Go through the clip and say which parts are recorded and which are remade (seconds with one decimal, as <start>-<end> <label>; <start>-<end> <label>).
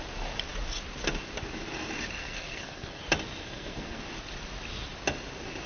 0.0-2.2 recorded; 2.2-3.0 remade; 3.0-3.4 recorded; 3.4-4.0 remade; 4.0-5.7 recorded